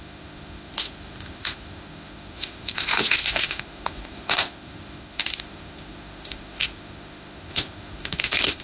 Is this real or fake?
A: fake